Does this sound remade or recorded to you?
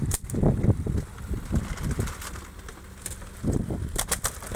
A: recorded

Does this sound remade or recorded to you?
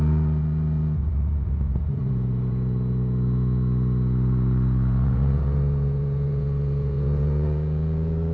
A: remade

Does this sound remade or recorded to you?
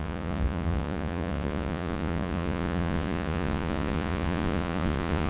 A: remade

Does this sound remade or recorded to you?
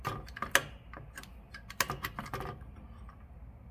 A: recorded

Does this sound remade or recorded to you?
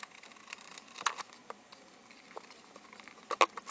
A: recorded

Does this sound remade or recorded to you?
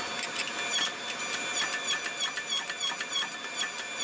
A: recorded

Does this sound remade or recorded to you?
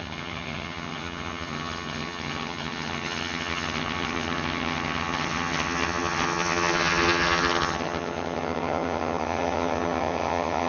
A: remade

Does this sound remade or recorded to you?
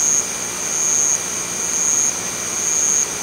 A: recorded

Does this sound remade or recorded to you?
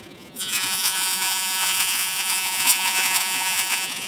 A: remade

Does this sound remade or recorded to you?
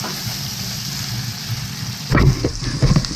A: recorded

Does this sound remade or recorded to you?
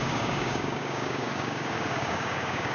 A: remade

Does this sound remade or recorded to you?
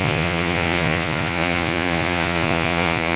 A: remade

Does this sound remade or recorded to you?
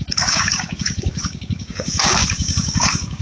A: remade